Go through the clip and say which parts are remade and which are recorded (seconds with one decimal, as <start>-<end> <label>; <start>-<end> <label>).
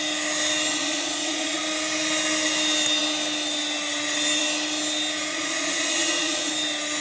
0.0-0.7 recorded; 0.7-1.6 remade; 1.6-5.3 recorded; 5.3-6.5 remade; 6.5-7.0 recorded